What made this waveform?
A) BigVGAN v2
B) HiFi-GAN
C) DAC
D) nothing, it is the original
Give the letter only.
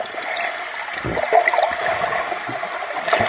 A